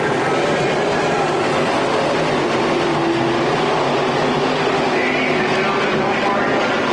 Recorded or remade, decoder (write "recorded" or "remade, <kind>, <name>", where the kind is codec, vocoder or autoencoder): recorded